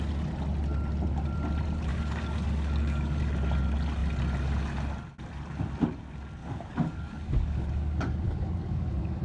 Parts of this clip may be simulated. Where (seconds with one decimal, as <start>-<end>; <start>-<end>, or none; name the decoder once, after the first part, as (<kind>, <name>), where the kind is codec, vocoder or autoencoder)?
1.9-3.2 (codec, DAC); 6.4-9.2